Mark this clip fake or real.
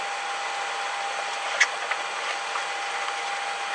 real